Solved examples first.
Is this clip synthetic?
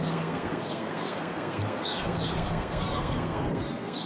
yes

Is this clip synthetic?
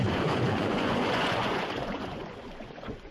yes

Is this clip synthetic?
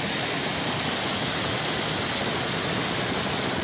no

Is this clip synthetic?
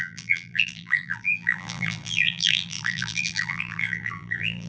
yes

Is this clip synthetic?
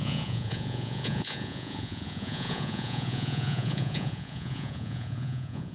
yes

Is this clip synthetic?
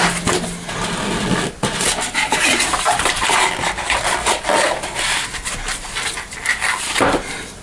no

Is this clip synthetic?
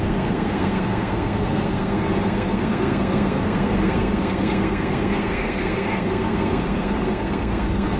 yes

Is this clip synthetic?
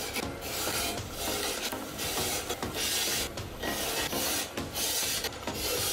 no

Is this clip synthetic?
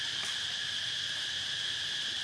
no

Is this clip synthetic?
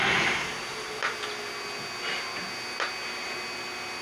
no